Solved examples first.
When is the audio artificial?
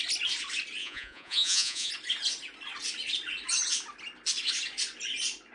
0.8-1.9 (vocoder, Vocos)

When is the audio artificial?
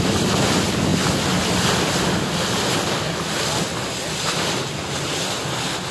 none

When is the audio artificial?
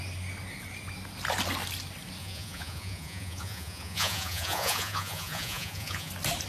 2.2-6.1 (vocoder, Vocos)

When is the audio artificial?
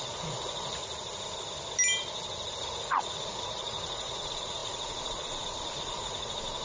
0.0-0.8 (vocoder, Vocos); 2.6-6.6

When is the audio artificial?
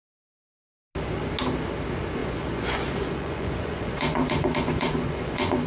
2.2-5.7 (vocoder, Vocos)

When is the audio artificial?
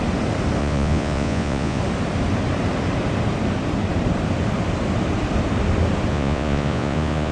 0.6-1.8 (vocoder, Vocos); 6.1-7.3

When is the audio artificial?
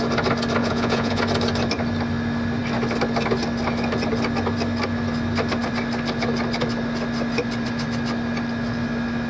0.6-1.2 (vocoder, Vocos)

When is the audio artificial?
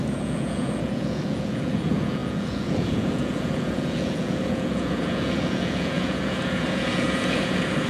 0.0-7.9 (vocoder, Vocos)